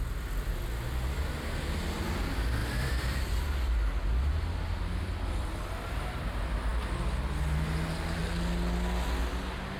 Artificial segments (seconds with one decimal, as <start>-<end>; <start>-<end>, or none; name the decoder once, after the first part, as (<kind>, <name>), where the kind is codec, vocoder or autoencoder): 2.6-3.2 (vocoder, BigVGAN v2)